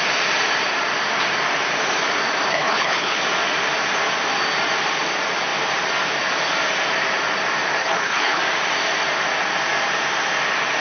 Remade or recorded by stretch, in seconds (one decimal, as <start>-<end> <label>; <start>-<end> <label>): 0.0-2.5 recorded; 2.5-3.2 remade; 3.2-7.8 recorded; 7.8-8.4 remade; 8.4-10.8 recorded